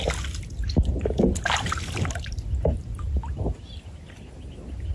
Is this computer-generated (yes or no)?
no